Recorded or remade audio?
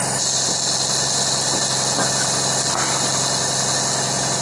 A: recorded